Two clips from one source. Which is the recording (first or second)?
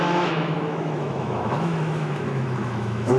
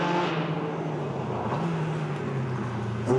second